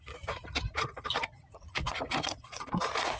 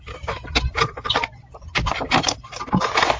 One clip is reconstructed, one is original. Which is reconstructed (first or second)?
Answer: first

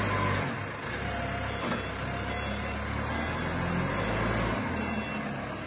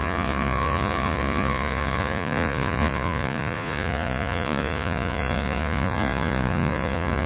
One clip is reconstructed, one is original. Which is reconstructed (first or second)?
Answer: second